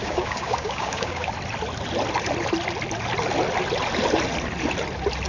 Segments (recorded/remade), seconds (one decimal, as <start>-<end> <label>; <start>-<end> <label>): 0.0-1.3 remade; 1.3-5.3 recorded